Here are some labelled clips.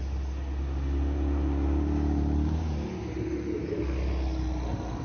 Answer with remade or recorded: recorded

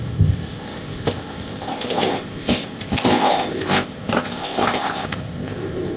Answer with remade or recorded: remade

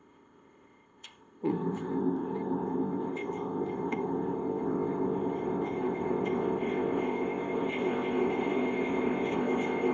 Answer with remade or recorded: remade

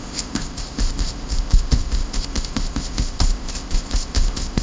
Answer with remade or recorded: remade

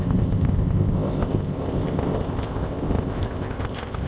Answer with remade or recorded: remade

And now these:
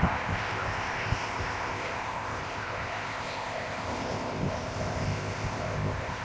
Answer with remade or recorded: remade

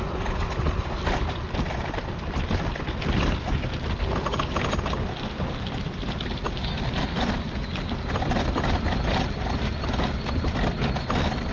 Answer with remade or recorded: recorded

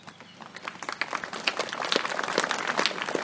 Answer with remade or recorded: recorded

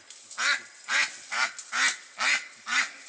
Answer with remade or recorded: recorded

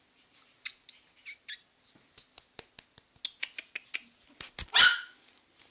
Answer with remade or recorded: recorded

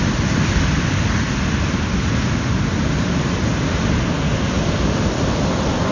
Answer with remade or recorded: recorded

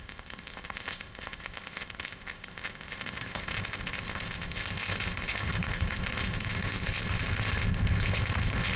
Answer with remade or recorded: remade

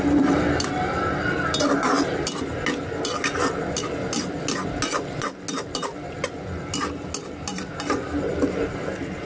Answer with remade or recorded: recorded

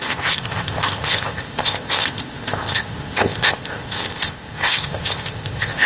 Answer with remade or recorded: remade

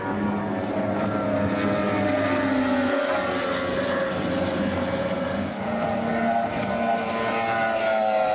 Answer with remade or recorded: recorded